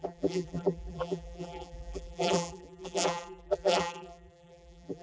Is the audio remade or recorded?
remade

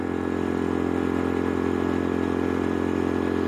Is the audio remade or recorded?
recorded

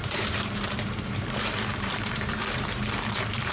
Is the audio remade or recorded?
remade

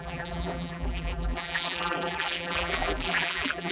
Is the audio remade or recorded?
remade